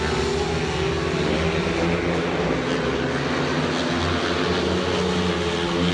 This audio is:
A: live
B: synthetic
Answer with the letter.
A